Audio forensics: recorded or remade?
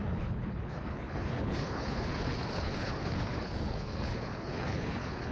remade